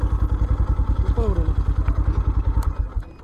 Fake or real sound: real